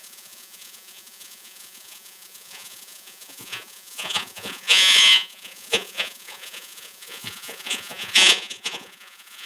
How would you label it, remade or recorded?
remade